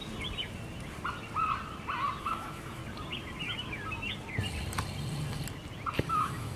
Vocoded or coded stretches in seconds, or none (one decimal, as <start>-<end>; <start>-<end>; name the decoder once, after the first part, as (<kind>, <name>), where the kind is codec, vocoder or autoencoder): 2.2-2.8 (autoencoder, DAC-VAE); 6.1-6.6

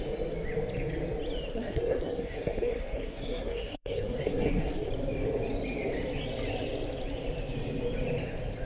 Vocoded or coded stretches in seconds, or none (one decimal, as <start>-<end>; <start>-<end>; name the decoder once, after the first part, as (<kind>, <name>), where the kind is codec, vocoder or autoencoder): 1.5-4.9 (codec, SNAC)

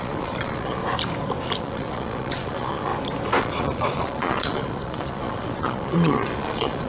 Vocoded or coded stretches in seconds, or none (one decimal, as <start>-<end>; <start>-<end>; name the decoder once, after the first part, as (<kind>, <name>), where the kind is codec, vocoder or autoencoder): 0.0-0.8 (vocoder, Vocos); 1.6-2.9; 3.4-6.9